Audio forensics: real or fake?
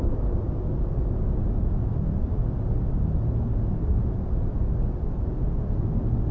real